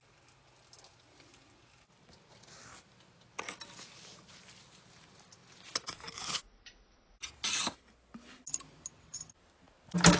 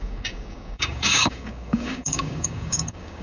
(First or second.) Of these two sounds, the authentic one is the first